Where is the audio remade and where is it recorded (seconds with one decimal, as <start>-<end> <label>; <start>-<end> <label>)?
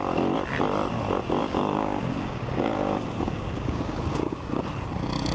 0.0-1.4 recorded; 1.4-4.6 remade; 4.6-5.3 recorded